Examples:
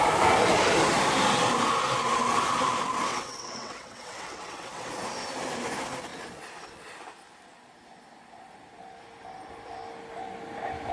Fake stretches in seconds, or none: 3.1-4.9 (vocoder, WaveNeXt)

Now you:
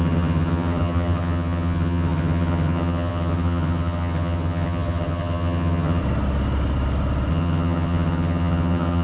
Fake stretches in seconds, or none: 0.0-6.0 (vocoder, HiFi-GAN); 7.3-9.0

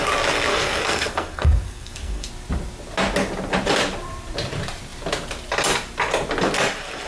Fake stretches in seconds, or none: 0.5-2.3 (codec, SNAC)

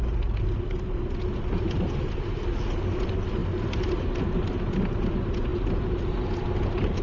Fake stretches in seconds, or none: none

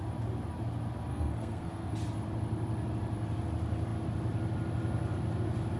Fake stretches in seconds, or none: 1.1-1.9 (codec, SNAC)

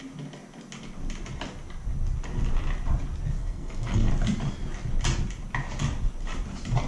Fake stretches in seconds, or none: 3.4-4.1 (codec, SNAC)